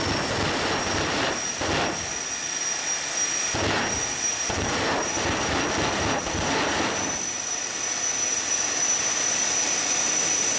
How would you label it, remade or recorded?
recorded